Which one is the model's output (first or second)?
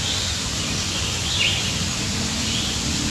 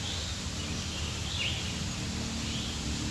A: first